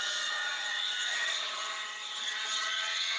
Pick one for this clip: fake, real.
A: fake